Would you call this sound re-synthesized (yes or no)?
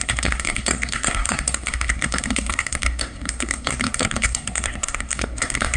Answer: yes